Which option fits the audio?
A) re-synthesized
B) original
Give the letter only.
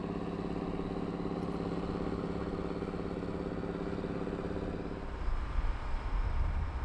B